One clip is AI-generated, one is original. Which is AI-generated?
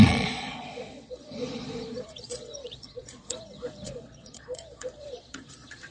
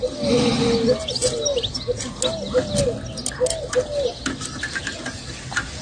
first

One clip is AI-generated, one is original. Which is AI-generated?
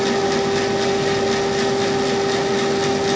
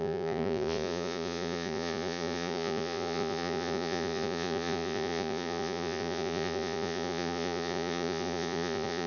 second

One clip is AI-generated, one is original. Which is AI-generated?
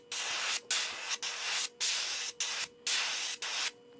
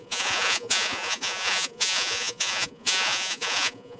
second